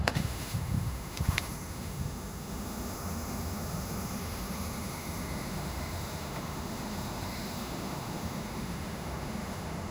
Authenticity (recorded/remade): remade